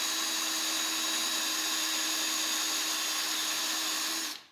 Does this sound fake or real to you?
real